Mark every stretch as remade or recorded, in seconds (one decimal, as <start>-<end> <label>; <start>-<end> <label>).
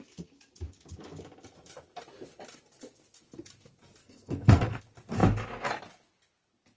0.0-4.0 recorded; 4.0-4.8 remade; 4.8-6.8 recorded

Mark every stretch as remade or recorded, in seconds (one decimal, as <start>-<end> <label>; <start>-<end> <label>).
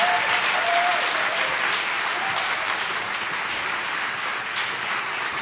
0.0-5.4 recorded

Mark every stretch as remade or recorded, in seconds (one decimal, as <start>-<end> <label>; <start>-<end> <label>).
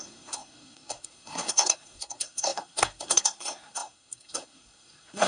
0.0-5.3 remade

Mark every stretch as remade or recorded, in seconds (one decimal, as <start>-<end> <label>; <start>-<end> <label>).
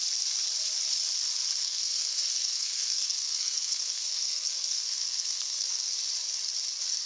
0.0-1.6 recorded; 1.6-5.9 remade; 5.9-7.1 recorded